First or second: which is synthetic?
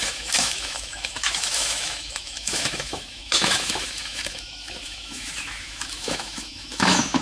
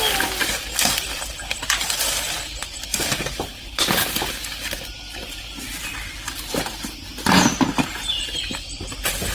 first